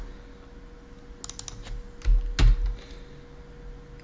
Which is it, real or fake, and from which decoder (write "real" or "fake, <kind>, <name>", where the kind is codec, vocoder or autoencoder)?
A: real